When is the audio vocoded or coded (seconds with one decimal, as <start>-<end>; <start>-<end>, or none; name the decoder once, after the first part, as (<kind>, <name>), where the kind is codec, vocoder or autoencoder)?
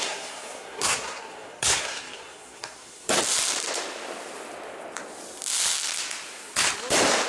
0.0-3.2 (codec, SNAC)